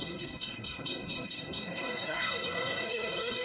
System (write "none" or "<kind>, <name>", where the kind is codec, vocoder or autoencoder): codec, SNAC